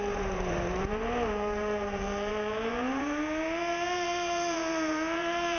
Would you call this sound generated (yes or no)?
yes